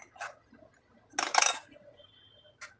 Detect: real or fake real